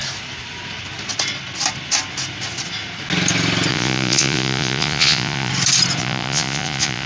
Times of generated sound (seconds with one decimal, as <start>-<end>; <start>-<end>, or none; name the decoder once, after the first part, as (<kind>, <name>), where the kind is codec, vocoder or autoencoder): 3.7-5.5 (vocoder, Vocos); 6.0-7.1